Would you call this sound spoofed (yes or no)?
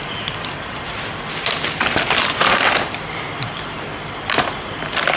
no